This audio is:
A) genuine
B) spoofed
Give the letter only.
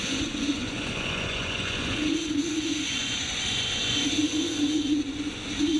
B